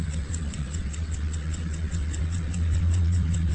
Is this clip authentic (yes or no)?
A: no